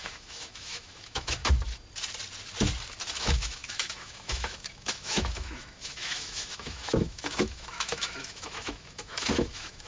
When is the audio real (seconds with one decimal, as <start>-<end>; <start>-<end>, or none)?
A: 1.4-3.1